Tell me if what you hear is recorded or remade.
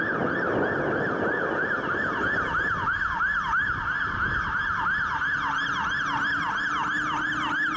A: recorded